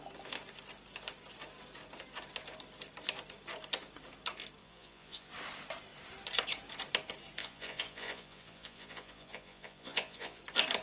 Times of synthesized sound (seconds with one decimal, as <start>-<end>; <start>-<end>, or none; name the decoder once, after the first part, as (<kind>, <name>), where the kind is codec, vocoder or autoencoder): 4.6-5.3 (vocoder, Vocos); 7.4-10.4